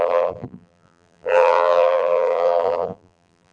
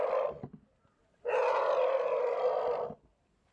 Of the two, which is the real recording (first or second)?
second